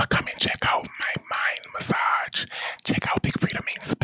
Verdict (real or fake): real